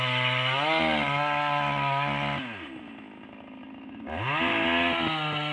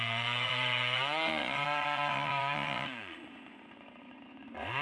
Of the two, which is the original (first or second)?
first